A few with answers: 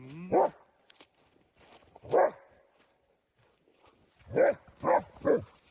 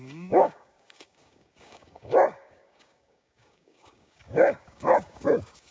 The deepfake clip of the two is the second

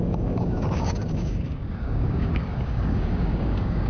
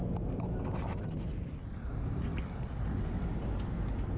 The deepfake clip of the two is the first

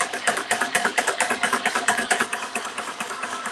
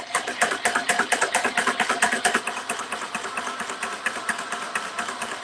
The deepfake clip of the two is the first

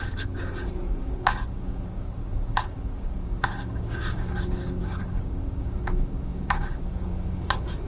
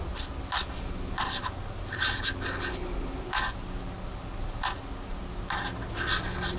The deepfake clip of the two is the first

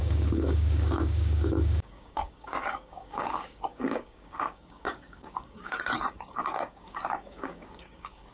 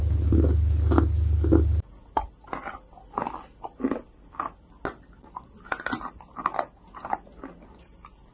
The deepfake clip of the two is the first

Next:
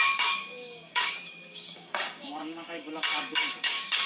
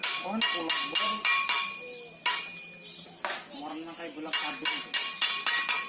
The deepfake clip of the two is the first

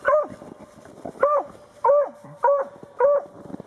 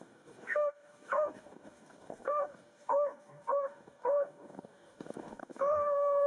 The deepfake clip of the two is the second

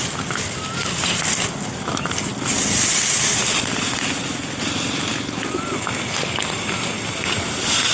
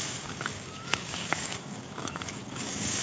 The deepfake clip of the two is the second